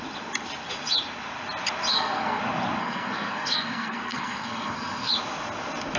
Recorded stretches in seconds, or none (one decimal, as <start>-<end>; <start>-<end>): 0.0-1.9; 2.4-2.8; 5.1-6.0

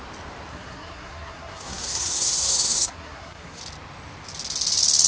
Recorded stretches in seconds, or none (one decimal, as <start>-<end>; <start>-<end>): 0.0-0.5; 3.6-5.1

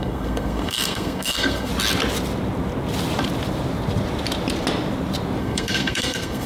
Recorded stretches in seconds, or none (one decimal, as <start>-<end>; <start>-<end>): 1.7-5.4

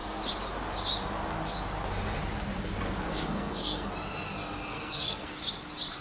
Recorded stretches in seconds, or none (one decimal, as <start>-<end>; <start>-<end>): 0.0-3.1; 3.9-4.7; 5.4-6.0

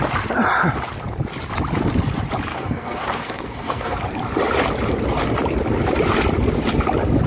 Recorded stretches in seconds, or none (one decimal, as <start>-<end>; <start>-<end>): 0.0-2.5; 4.0-7.3